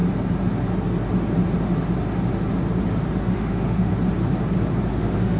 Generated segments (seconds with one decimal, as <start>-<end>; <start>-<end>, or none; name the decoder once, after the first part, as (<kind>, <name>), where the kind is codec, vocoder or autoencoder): 3.2-3.9 (autoencoder, DAC-VAE); 4.9-5.4